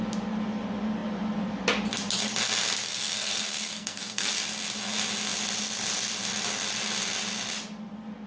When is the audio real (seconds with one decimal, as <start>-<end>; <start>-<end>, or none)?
0.0-2.8; 4.3-8.3

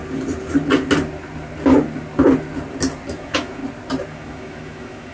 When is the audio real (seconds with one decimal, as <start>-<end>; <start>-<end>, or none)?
0.0-3.1; 3.6-4.1